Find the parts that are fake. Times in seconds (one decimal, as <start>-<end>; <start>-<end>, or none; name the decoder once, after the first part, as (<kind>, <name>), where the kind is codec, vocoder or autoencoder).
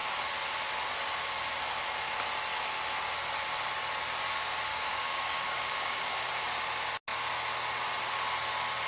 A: 4.7-6.3 (codec, DAC)